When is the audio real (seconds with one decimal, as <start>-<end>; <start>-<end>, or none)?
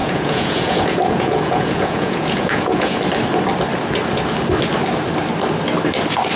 3.0-6.4